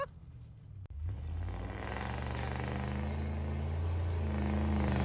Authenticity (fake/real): real